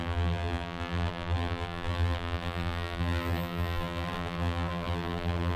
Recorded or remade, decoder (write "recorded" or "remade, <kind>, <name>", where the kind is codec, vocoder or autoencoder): remade, vocoder, BigVGAN v2